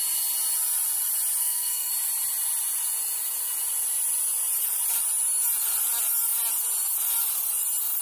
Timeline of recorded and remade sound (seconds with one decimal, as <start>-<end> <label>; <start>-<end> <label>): 0.0-1.4 recorded; 1.4-1.9 remade; 1.9-8.0 recorded